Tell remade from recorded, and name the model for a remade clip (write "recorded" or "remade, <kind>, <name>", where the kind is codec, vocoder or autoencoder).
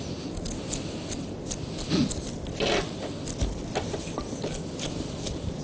recorded